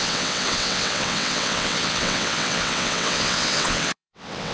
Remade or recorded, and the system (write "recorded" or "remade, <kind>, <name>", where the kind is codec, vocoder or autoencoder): remade, vocoder, WaveNeXt